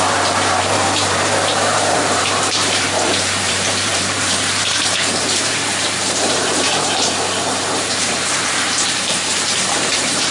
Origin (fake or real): fake